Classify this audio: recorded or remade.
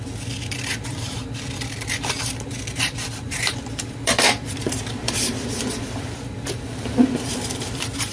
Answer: remade